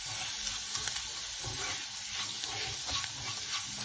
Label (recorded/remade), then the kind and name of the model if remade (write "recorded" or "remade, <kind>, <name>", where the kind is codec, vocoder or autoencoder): recorded